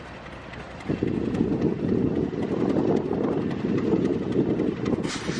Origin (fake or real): real